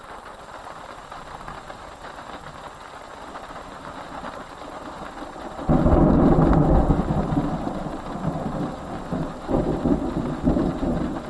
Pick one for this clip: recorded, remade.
recorded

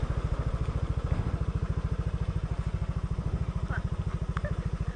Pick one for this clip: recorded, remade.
recorded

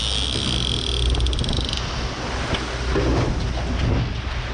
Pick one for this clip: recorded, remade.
recorded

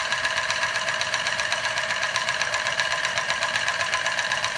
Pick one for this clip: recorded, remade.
remade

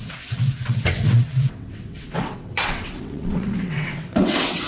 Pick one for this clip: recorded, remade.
remade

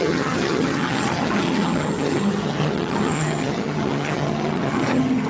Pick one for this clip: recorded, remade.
remade